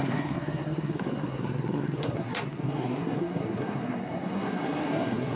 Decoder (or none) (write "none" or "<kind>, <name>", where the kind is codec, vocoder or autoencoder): codec, SNAC